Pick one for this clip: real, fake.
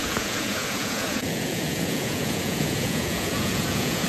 fake